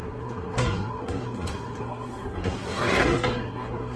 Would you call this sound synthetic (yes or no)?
yes